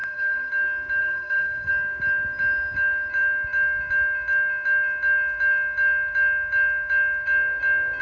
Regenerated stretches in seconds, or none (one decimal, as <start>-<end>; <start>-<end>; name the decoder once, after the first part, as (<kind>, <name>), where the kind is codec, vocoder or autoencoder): 0.0-0.5 (codec, SNAC); 1.0-1.7